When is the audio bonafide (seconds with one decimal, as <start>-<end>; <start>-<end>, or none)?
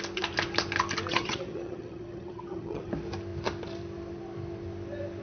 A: 0.0-1.1; 2.9-5.2